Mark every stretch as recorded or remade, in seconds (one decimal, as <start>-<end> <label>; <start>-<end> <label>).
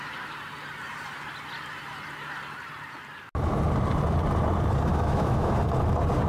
0.0-4.9 recorded; 4.9-5.5 remade; 5.5-6.3 recorded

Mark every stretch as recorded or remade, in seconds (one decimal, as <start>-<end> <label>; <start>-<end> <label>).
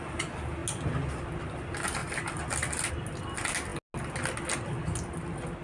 0.0-5.6 recorded